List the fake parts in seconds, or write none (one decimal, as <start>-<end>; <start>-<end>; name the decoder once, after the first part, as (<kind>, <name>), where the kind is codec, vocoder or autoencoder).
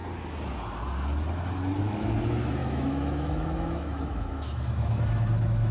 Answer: 1.8-5.7 (autoencoder, DAC-VAE)